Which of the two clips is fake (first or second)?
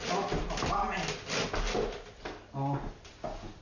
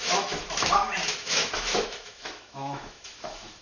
second